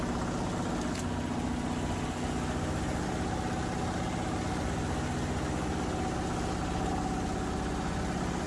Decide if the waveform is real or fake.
real